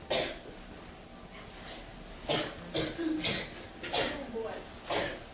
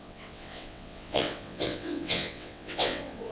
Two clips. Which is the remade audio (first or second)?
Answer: second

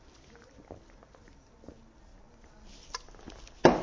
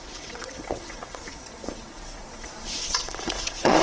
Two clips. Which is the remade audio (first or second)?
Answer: second